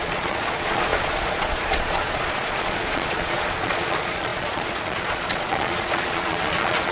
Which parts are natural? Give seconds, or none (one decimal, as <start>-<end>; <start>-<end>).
none